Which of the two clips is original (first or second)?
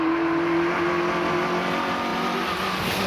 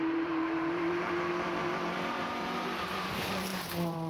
first